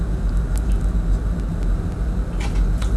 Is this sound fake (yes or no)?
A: no